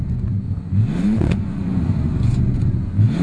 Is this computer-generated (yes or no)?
yes